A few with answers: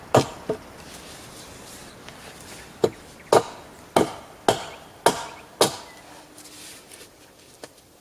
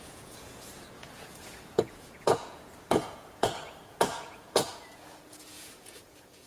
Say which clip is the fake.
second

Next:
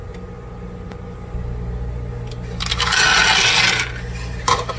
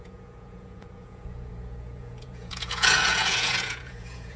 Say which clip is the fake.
second